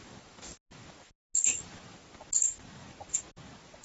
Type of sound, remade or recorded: recorded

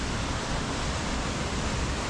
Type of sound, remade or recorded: recorded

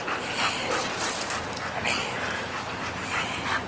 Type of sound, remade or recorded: recorded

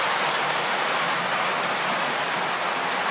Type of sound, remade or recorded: recorded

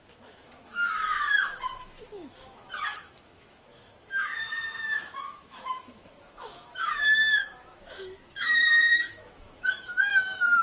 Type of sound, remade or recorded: remade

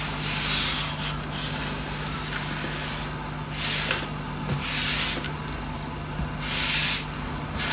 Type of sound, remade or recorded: recorded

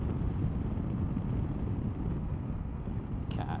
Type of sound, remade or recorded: recorded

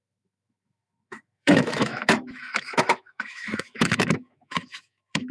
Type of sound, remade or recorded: remade